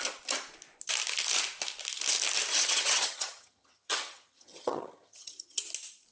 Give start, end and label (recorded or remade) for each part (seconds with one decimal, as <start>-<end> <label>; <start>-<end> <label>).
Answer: 0.0-2.5 recorded; 2.5-5.6 remade; 5.6-6.1 recorded